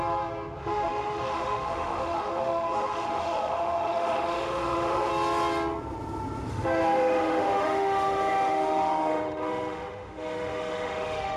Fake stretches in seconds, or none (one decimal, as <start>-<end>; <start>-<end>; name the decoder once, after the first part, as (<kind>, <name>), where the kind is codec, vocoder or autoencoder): 0.6-5.1 (autoencoder, DAC-VAE); 6.5-11.4